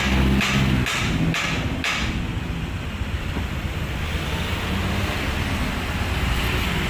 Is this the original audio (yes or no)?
yes